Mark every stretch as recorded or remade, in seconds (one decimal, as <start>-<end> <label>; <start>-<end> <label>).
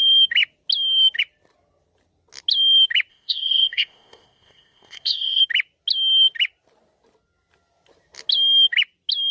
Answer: 0.0-3.1 recorded; 3.1-5.4 remade; 5.4-9.3 recorded